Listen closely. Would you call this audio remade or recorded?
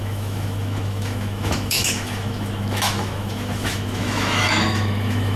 remade